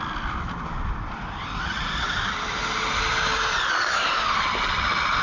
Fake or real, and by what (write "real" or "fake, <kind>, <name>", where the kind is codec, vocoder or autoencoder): real